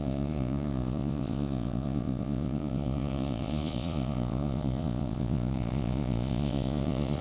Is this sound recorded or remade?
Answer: remade